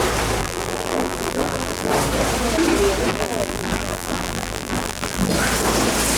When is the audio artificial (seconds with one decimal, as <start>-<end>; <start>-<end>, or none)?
0.4-1.9; 3.1-5.3